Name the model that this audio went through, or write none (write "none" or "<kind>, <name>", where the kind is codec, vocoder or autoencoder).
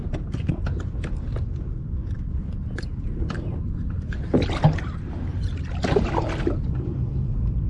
none